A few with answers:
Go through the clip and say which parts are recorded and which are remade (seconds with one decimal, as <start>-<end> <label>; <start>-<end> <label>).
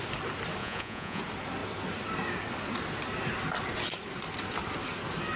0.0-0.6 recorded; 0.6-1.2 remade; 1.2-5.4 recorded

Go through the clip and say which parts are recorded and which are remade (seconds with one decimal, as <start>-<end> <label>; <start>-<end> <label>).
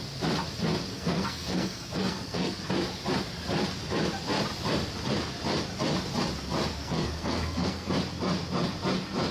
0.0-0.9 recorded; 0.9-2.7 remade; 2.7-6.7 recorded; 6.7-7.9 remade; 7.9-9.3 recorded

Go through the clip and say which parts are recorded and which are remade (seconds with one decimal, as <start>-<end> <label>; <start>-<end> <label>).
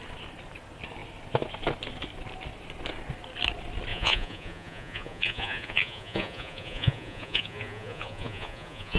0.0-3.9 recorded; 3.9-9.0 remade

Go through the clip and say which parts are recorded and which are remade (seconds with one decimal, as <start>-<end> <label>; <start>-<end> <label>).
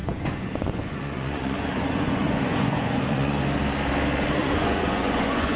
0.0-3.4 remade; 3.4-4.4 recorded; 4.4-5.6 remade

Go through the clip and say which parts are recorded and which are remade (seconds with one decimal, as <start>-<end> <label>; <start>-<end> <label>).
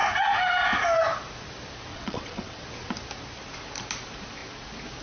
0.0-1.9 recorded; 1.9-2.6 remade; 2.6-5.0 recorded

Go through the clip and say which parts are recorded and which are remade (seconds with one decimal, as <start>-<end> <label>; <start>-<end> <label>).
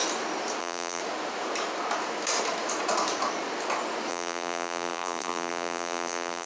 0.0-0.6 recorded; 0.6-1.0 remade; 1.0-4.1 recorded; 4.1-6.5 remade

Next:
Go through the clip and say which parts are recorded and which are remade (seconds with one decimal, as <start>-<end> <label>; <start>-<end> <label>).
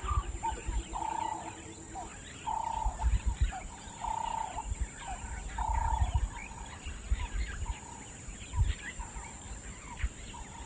0.0-6.4 recorded; 6.4-7.4 remade; 7.4-9.2 recorded; 9.2-10.1 remade; 10.1-10.7 recorded